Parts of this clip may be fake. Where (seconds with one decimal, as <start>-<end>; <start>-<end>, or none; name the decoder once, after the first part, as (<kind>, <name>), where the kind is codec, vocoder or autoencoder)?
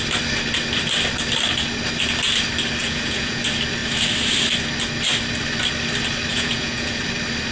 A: 2.8-3.4 (vocoder, Vocos); 6.3-7.0